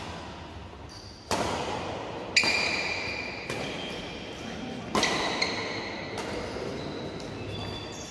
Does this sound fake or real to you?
real